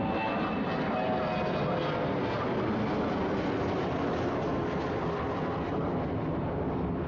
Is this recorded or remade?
recorded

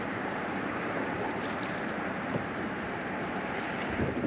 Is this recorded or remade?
remade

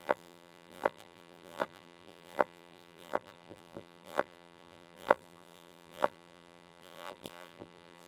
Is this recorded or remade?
remade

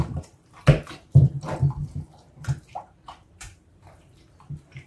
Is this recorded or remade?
remade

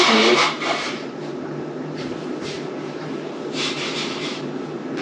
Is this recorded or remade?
remade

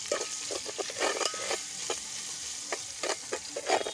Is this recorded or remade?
recorded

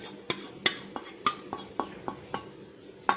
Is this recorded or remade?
recorded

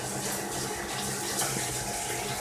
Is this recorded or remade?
recorded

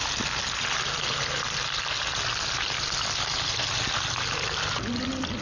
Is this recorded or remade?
recorded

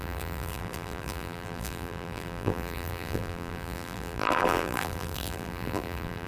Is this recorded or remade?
remade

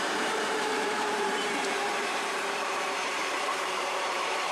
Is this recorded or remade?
remade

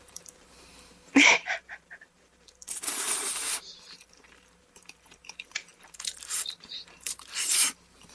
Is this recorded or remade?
remade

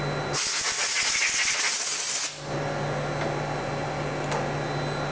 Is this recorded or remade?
recorded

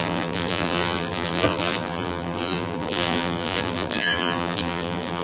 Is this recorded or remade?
remade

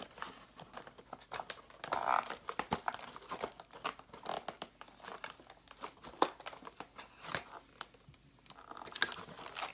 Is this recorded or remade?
recorded